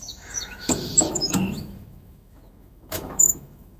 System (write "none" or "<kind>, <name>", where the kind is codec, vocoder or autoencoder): autoencoder, DAC-VAE